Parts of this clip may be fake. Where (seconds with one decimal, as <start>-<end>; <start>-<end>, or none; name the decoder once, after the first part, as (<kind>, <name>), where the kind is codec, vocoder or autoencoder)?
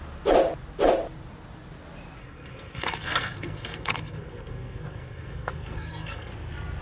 2.2-6.3 (codec, SNAC)